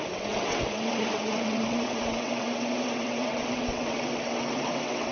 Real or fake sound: fake